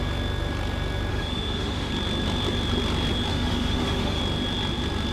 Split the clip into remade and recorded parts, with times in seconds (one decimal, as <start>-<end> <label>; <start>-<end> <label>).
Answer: 0.0-1.1 recorded; 1.1-1.9 remade; 1.9-3.3 recorded; 3.3-4.2 remade; 4.2-5.1 recorded